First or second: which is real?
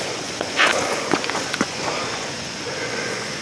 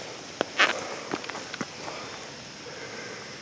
second